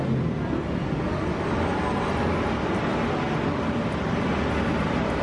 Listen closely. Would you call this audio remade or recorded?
recorded